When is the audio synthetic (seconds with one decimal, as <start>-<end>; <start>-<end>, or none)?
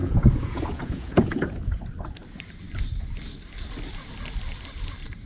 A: 0.0-1.8